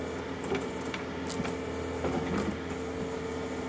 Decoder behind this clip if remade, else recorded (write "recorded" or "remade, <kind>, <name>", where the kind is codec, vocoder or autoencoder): recorded